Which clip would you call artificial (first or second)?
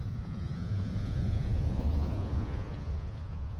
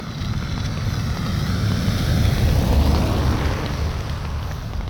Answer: first